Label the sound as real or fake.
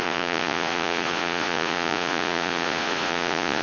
fake